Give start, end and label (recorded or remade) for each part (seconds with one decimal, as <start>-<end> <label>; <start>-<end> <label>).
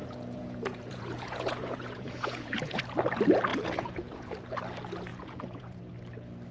0.0-2.8 remade; 2.8-3.5 recorded; 3.5-4.3 remade; 4.3-5.1 recorded; 5.1-5.9 remade; 5.9-6.5 recorded